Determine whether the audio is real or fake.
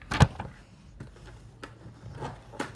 real